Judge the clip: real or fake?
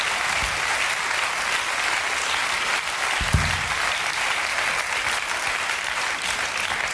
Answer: real